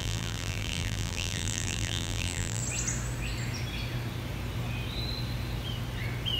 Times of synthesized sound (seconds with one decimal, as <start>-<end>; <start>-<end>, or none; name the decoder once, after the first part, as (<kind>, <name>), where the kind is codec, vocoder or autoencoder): 0.0-2.6 (vocoder, BigVGAN v2)